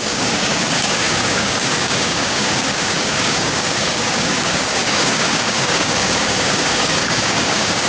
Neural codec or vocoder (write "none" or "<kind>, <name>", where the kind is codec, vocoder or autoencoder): codec, DAC